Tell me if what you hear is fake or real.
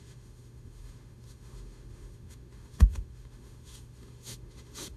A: fake